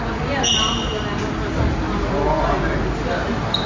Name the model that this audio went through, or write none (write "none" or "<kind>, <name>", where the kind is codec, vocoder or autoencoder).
none